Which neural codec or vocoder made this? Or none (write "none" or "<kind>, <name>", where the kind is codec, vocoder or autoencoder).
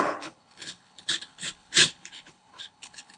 codec, HILCodec